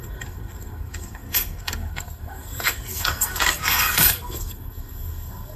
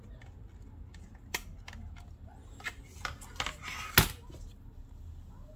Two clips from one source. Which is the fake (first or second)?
first